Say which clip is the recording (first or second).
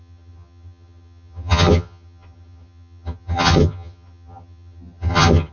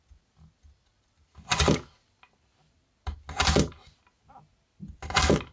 second